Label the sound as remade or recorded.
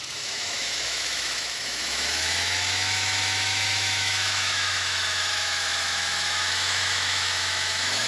remade